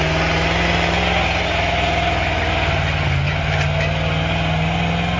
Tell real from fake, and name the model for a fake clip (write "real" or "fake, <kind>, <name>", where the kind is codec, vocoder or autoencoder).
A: real